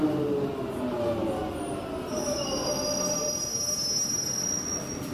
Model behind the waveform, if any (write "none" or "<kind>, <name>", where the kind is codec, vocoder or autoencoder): none